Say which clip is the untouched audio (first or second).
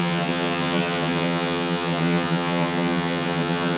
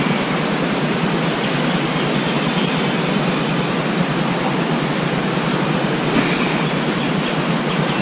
second